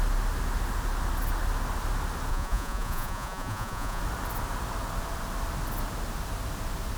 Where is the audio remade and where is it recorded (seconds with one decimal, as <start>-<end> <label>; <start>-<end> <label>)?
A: 0.0-2.3 recorded; 2.3-4.0 remade; 4.0-7.0 recorded

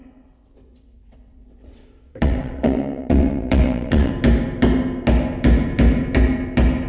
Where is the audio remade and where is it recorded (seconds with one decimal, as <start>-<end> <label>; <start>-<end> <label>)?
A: 0.0-4.1 remade; 4.1-6.9 recorded

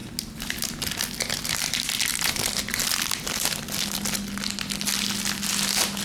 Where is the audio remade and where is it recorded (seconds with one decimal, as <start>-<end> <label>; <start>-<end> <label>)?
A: 0.0-6.0 recorded

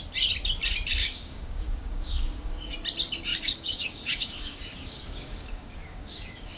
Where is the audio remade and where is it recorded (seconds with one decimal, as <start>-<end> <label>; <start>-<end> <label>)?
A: 0.0-1.0 recorded; 1.0-2.7 remade; 2.7-3.3 recorded; 3.3-6.6 remade

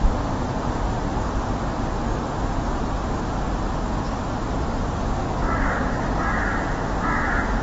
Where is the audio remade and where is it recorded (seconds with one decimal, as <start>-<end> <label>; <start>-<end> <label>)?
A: 0.0-5.2 recorded; 5.2-6.0 remade; 6.0-7.6 recorded

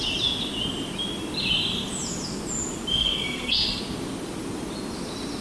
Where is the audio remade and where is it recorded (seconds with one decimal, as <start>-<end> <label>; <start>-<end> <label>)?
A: 0.0-2.9 recorded; 2.9-3.8 remade; 3.8-5.4 recorded